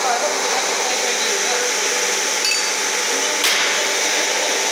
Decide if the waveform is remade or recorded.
recorded